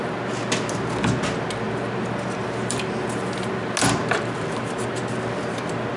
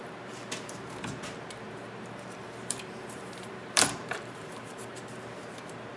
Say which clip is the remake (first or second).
second